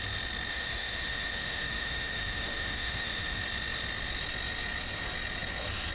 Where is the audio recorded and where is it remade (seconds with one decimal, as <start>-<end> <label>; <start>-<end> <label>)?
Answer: 0.0-0.5 recorded; 0.5-3.4 remade; 3.4-5.9 recorded